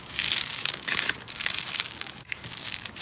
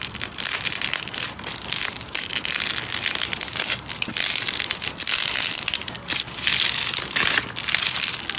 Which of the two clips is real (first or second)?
second